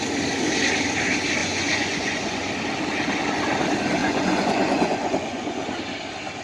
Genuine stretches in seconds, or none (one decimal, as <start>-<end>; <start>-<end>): 0.0-1.4; 2.5-4.0; 5.8-6.4